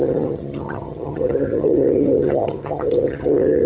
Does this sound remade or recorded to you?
remade